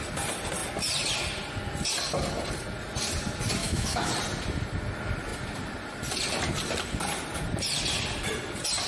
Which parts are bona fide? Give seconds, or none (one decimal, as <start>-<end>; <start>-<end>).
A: 0.0-3.6; 4.1-8.9